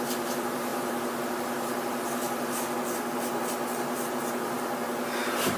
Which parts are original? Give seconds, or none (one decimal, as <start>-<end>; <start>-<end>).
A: none